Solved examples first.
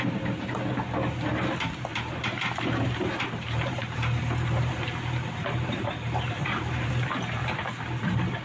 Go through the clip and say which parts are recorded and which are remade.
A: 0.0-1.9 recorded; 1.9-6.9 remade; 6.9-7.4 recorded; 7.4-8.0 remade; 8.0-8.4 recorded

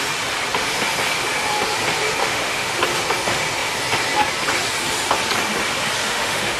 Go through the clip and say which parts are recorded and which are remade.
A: 0.0-2.2 recorded; 2.2-2.8 remade; 2.8-6.0 recorded; 6.0-6.6 remade

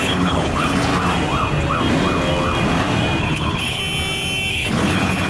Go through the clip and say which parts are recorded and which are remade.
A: 0.0-0.9 remade; 0.9-3.2 recorded; 3.2-3.8 remade; 3.8-4.5 recorded; 4.5-5.3 remade